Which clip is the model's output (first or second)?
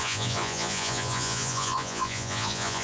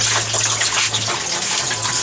first